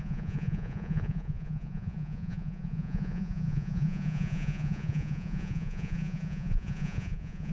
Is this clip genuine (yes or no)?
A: no